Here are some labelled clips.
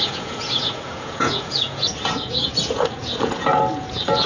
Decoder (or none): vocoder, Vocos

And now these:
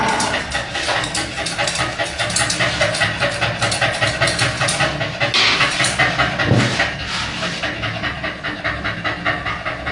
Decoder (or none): none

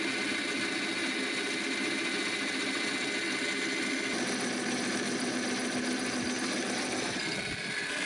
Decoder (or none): none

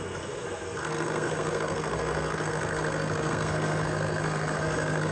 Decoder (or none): codec, SNAC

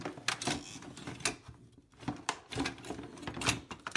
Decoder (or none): none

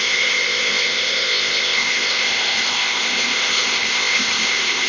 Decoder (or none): codec, ZipCodec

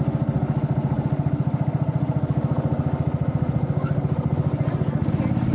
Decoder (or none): none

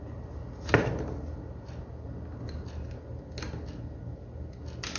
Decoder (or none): none